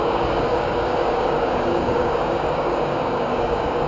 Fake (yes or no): yes